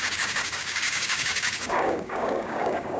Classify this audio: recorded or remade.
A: remade